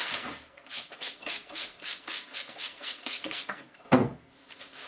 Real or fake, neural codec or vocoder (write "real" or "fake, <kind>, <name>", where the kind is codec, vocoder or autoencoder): fake, codec, SNAC